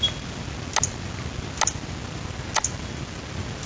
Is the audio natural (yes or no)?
yes